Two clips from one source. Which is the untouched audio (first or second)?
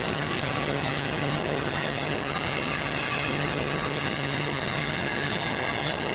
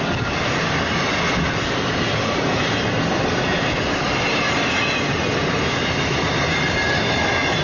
second